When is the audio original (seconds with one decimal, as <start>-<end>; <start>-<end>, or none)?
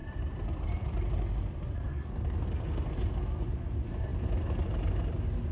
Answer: 0.0-1.9; 2.9-5.5